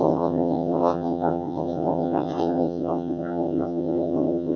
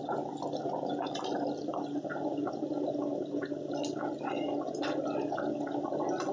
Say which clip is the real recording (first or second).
second